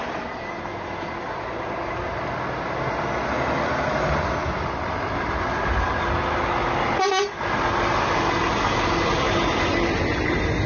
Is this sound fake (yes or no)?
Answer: no